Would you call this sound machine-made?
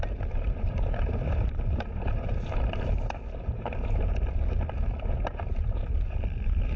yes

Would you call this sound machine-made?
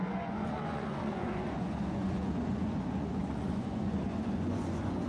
yes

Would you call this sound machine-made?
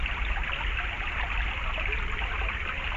no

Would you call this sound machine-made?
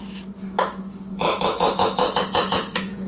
yes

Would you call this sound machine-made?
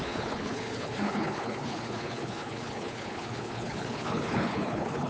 yes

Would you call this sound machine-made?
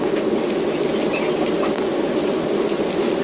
no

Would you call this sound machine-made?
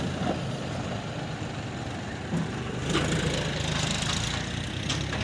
no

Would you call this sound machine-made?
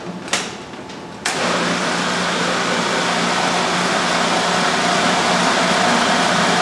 no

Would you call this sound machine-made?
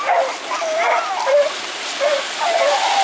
no